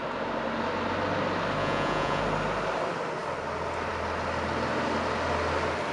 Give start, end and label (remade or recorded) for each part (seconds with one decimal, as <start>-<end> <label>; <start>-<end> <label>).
0.0-1.6 recorded; 1.6-2.2 remade; 2.2-5.9 recorded